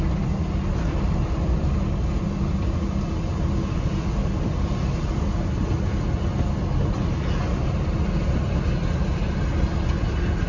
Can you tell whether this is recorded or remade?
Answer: recorded